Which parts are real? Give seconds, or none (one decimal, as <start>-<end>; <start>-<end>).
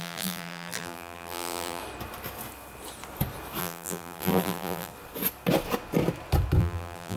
1.8-3.6; 4.9-6.6